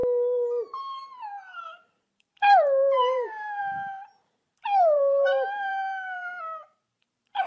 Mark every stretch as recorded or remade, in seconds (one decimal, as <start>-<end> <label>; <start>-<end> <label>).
0.0-7.5 remade